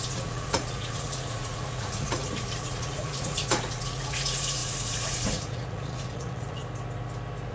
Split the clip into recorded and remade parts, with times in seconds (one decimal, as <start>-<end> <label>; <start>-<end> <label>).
0.0-6.6 remade; 6.6-7.5 recorded